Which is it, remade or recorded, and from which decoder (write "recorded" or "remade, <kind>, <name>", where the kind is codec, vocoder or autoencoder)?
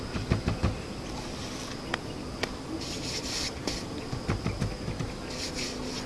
recorded